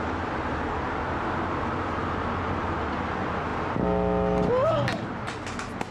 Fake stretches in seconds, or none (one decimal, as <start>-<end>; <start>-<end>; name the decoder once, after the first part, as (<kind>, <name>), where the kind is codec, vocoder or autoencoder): none